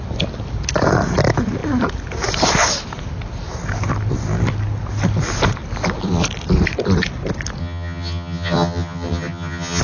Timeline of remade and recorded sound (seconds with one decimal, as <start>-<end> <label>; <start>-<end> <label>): 0.0-7.6 recorded; 7.6-9.8 remade

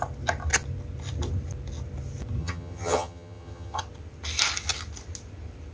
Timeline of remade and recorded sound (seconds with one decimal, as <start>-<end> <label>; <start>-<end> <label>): 0.0-2.4 recorded; 2.4-3.8 remade; 3.8-5.7 recorded

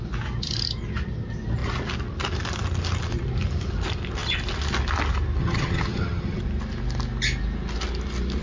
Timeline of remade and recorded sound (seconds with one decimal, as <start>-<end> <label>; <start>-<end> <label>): 0.0-5.4 recorded; 5.4-6.4 remade; 6.4-8.4 recorded

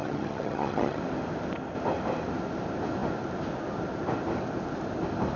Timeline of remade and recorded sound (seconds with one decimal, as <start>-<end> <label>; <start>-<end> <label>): 0.0-1.0 remade; 1.0-5.4 recorded

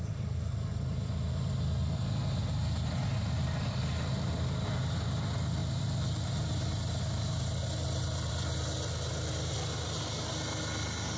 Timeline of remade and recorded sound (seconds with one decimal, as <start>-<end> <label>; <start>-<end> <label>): 0.0-11.2 recorded

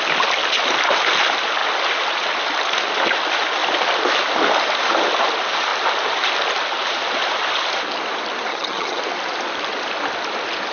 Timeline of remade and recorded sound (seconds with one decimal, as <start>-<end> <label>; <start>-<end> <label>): 0.0-8.5 recorded; 8.5-9.0 remade; 9.0-10.7 recorded

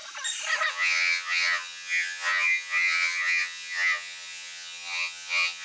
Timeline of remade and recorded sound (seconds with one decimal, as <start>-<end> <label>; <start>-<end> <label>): 0.0-0.7 recorded; 0.7-5.6 remade